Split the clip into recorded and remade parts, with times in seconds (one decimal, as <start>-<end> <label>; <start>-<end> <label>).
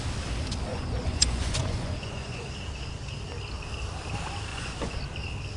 0.0-0.7 recorded; 0.7-2.5 remade; 2.5-4.5 recorded; 4.5-5.0 remade; 5.0-5.6 recorded